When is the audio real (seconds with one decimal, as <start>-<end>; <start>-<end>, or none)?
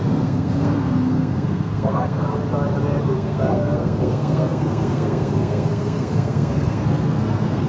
2.3-3.0